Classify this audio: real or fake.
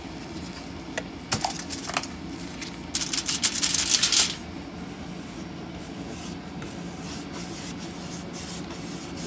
real